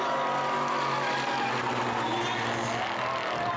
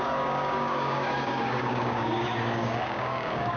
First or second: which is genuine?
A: first